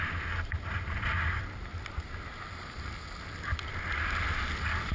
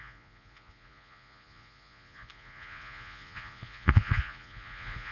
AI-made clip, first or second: second